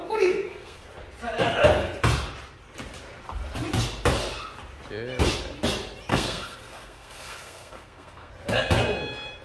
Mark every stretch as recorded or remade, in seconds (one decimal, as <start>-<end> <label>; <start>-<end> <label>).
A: 0.0-0.9 remade; 0.9-6.1 recorded; 6.1-8.3 remade; 8.3-9.4 recorded